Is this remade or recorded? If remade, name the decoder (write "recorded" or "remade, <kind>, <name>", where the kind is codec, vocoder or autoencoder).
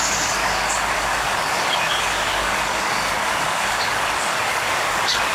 remade, codec, DAC